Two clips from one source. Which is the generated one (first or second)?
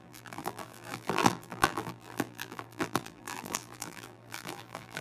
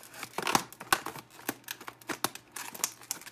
first